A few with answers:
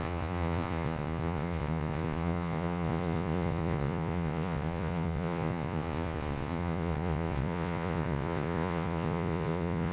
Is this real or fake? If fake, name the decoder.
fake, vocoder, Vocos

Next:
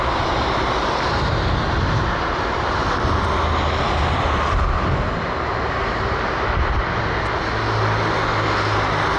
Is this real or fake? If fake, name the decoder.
real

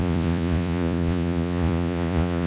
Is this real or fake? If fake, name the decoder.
fake, vocoder, Vocos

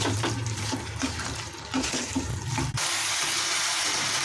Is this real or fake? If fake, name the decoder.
real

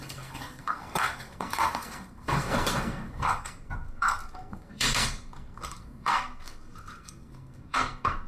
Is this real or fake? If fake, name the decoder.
fake, codec, SNAC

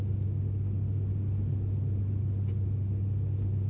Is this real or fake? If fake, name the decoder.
real